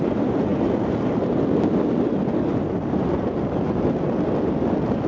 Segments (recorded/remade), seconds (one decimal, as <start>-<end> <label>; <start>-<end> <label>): 0.0-5.1 recorded

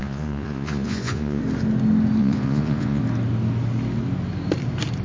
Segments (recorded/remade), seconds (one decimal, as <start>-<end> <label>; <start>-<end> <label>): 0.0-1.4 remade; 1.4-2.2 recorded; 2.2-3.0 remade; 3.0-5.0 recorded

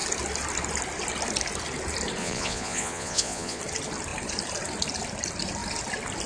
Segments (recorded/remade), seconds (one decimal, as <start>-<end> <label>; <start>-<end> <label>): 0.0-2.2 recorded; 2.2-3.6 remade; 3.6-6.3 recorded

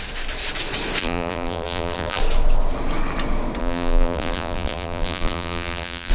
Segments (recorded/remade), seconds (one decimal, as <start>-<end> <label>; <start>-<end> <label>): 0.0-1.0 recorded; 1.0-2.2 remade; 2.2-3.6 recorded; 3.6-6.1 remade

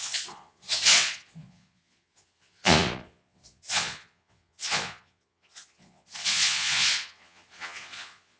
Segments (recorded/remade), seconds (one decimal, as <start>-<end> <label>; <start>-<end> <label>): 0.0-8.4 remade

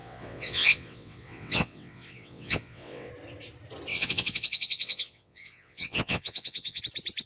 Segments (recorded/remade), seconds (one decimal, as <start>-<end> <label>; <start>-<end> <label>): 0.0-3.1 remade; 3.1-3.9 recorded; 3.9-6.8 remade; 6.8-7.3 recorded

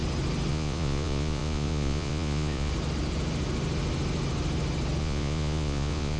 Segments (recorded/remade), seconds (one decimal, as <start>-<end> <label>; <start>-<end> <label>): 0.0-0.5 recorded; 0.5-2.7 remade; 2.7-5.0 recorded; 5.0-6.2 remade

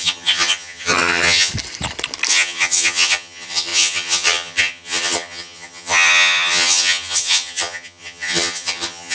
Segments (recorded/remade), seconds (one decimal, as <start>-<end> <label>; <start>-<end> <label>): 0.0-1.5 remade; 1.5-2.3 recorded; 2.3-9.1 remade